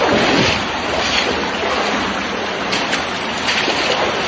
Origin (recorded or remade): recorded